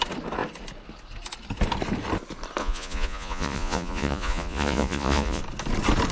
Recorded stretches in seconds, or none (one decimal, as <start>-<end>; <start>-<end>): 0.0-2.6; 5.4-6.1